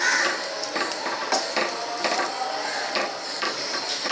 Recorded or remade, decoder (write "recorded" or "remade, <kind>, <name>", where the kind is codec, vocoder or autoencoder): recorded